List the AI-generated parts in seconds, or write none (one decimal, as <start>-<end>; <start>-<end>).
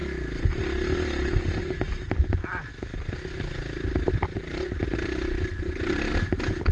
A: none